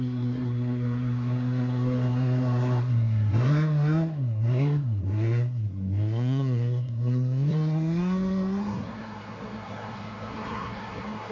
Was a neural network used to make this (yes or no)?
yes